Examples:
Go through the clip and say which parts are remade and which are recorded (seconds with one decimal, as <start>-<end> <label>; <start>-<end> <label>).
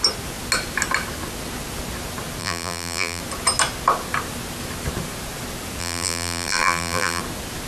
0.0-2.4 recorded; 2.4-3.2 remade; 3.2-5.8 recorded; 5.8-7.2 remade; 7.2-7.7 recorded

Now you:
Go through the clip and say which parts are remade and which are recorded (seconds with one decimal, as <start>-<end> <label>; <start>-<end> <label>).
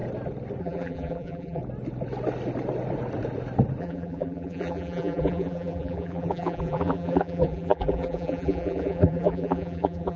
0.0-0.6 recorded; 0.6-1.6 remade; 1.6-3.8 recorded; 3.8-10.2 remade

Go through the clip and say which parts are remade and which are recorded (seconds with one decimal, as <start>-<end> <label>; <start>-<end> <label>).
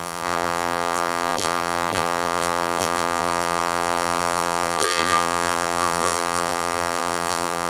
0.0-7.7 remade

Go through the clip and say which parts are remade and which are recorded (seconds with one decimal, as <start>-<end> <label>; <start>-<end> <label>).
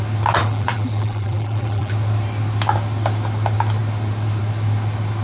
0.0-0.4 recorded; 0.4-1.9 remade; 1.9-5.2 recorded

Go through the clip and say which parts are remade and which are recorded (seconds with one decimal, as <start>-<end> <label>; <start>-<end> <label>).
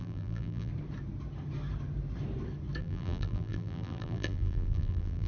0.0-0.7 remade; 0.7-2.8 recorded; 2.8-5.3 remade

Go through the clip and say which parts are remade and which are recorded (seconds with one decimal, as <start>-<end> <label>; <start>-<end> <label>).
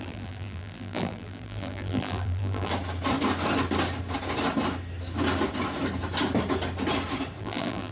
0.0-2.7 remade; 2.7-7.4 recorded; 7.4-7.9 remade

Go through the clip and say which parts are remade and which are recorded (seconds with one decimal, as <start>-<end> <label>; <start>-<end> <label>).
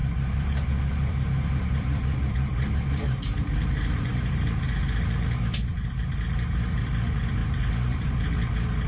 0.0-4.8 remade; 4.8-5.7 recorded; 5.7-6.9 remade; 6.9-7.4 recorded; 7.4-8.1 remade; 8.1-8.9 recorded